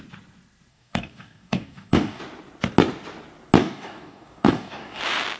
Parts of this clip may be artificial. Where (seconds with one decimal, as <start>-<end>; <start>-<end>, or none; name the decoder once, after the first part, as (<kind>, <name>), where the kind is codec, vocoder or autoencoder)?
0.7-2.2 (codec, DAC); 3.6-5.0